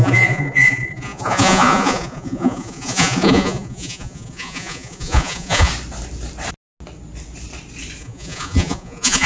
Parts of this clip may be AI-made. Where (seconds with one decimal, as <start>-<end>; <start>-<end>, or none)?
0.0-5.7; 8.0-9.3